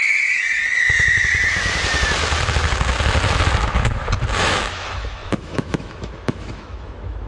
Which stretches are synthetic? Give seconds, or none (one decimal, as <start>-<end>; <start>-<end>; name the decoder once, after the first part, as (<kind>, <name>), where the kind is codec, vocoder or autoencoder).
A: 4.4-7.3 (autoencoder, DAC-VAE)